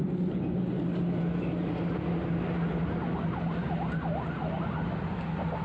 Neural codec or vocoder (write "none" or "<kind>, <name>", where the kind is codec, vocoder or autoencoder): none